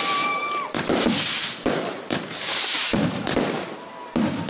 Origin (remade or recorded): remade